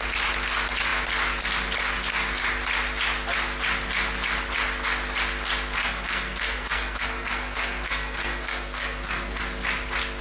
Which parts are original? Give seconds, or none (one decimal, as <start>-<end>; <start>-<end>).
0.0-5.8; 9.4-10.2